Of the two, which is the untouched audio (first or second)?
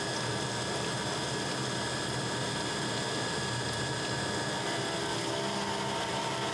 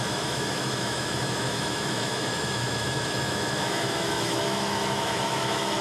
first